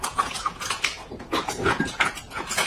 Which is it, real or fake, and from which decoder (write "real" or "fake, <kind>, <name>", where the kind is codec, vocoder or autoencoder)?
fake, vocoder, Vocos